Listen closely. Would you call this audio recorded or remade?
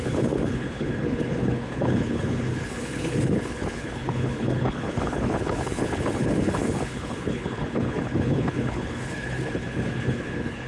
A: remade